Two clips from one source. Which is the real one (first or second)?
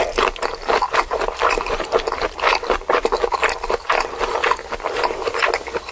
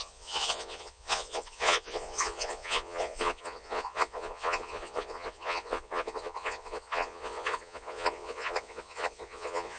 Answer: first